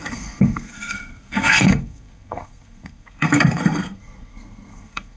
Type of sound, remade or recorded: remade